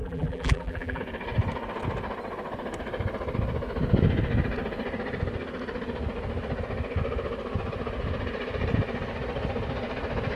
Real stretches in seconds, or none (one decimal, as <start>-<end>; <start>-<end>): 1.0-10.4